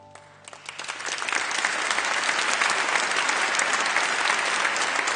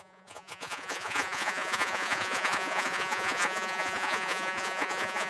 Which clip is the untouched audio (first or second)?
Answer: first